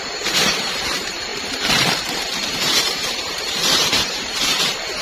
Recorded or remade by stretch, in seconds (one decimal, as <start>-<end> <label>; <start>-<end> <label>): 0.0-5.0 remade

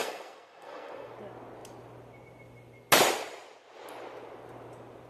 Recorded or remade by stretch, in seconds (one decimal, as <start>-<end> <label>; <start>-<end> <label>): 0.0-1.1 remade; 1.1-5.1 recorded

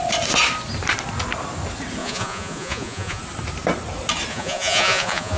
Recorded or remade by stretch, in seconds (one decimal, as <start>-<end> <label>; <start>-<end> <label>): 0.0-2.0 recorded; 2.0-3.2 remade; 3.2-4.3 recorded; 4.3-5.4 remade

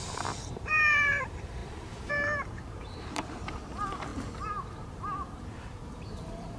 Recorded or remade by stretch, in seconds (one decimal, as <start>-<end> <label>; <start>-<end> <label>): 0.0-4.1 remade; 4.1-4.9 recorded; 4.9-6.6 remade